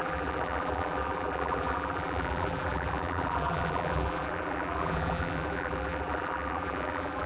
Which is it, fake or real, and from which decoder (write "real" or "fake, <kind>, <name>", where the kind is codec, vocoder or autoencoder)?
fake, vocoder, BigVGAN v2